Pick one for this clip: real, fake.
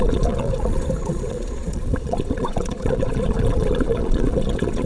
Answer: fake